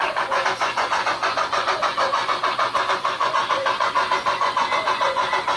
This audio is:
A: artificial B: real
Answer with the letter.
A